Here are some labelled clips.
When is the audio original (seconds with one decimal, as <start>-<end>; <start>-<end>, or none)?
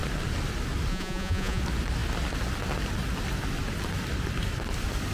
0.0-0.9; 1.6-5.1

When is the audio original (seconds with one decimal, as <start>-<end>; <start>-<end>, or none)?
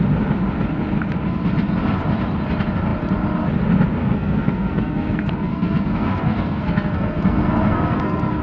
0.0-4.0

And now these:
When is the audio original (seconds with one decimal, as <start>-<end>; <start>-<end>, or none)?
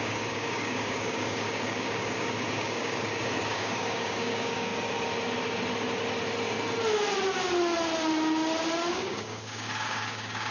4.7-8.9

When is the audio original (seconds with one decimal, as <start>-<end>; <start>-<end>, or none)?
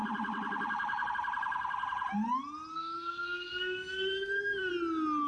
0.0-2.7; 4.7-5.3